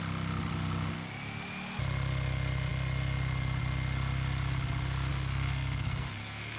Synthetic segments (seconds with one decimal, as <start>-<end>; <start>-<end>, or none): 5.1-6.6